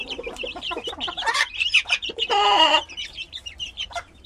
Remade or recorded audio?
remade